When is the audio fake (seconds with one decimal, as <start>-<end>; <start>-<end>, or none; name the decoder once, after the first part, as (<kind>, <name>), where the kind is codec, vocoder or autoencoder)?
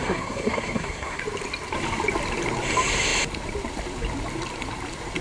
0.0-1.2 (codec, SNAC)